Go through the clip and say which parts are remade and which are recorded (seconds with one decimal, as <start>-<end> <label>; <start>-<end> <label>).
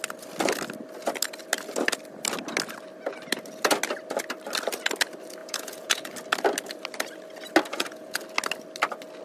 0.0-5.4 recorded; 5.4-6.1 remade; 6.1-7.7 recorded; 7.7-8.2 remade; 8.2-9.2 recorded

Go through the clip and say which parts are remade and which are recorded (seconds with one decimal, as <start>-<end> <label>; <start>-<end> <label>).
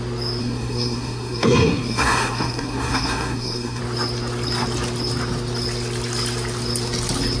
0.0-0.4 recorded; 0.4-3.8 remade; 3.8-7.4 recorded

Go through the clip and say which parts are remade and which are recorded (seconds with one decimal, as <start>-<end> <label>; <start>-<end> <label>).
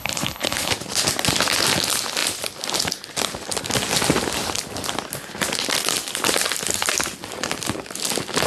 0.0-0.7 remade; 0.7-8.5 recorded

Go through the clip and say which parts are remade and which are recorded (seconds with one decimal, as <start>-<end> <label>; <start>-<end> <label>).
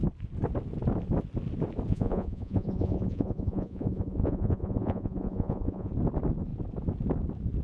0.0-1.9 recorded; 1.9-5.9 remade; 5.9-7.6 recorded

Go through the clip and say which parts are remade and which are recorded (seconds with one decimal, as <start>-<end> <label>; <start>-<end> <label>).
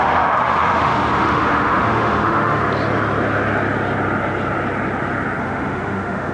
0.0-2.6 remade; 2.6-5.4 recorded; 5.4-6.3 remade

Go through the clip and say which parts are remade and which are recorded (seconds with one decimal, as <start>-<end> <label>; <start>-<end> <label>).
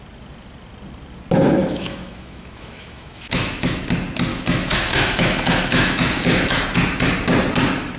0.0-1.6 recorded; 1.6-3.8 remade; 3.8-4.3 recorded; 4.3-6.6 remade; 6.6-8.0 recorded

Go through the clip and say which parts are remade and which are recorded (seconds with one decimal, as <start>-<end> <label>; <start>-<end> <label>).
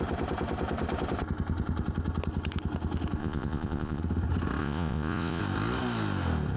0.0-3.2 recorded; 3.2-4.0 remade; 4.0-4.6 recorded; 4.6-5.4 remade; 5.4-6.6 recorded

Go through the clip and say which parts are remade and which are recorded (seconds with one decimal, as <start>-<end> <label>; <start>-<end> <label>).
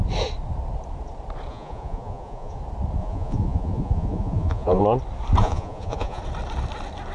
0.0-1.5 recorded; 1.5-2.6 remade; 2.6-3.0 recorded; 3.0-4.8 remade; 4.8-5.4 recorded; 5.4-6.2 remade; 6.2-7.1 recorded